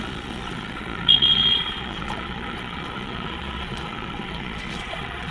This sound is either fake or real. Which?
fake